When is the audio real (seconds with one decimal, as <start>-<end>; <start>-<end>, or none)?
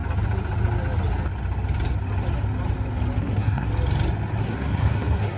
0.0-3.2; 3.7-4.4